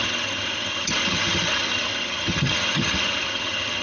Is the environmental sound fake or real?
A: fake